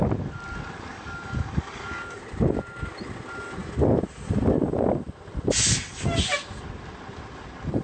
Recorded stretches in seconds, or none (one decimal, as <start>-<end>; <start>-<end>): 0.0-0.9; 2.2-7.8